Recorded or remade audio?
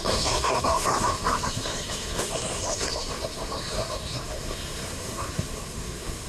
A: remade